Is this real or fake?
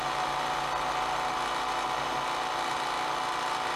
real